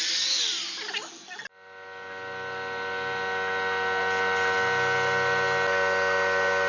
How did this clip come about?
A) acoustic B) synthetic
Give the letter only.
A